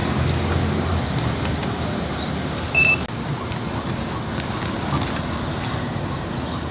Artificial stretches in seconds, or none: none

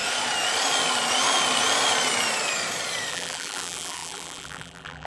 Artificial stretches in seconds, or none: 3.1-5.1 (vocoder, BigVGAN v2)

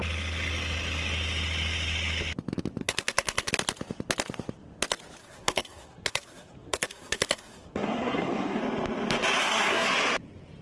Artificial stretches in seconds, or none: 2.8-3.5 (codec, SNAC); 5.2-8.6; 9.4-9.9